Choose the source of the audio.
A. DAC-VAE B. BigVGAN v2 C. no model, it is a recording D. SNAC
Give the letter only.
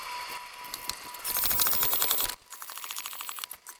C